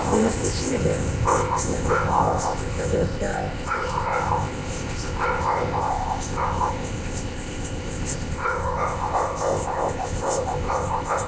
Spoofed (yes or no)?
yes